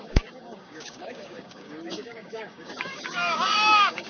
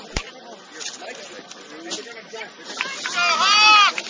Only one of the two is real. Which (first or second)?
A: second